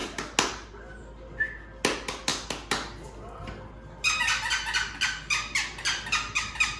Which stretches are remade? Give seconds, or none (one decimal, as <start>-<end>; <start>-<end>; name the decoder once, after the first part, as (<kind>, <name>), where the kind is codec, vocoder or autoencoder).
none